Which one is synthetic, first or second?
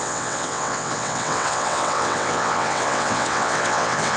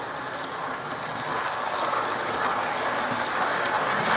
first